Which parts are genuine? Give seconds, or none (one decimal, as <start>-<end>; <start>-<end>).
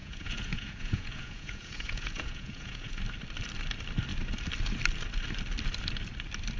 3.0-6.6